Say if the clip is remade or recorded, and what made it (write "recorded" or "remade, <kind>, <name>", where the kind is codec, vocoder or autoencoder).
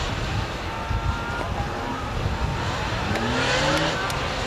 recorded